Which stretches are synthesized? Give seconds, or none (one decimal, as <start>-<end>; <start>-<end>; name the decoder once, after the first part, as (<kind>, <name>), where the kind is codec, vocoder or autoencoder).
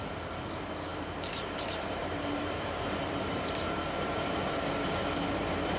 0.9-4.4 (vocoder, BigVGAN v2)